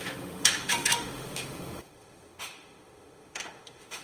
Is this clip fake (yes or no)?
yes